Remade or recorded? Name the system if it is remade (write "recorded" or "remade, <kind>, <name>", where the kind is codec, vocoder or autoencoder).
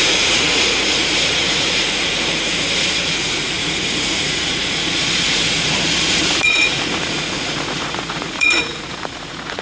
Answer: remade, vocoder, Vocos